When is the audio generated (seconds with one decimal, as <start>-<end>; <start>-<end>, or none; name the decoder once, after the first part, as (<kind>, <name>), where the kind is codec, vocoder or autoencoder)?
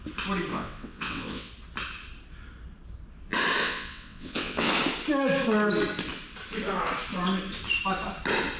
0.5-1.5 (vocoder, WaveNeXt); 3.6-4.7